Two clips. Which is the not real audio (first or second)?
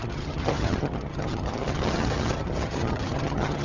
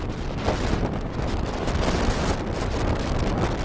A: first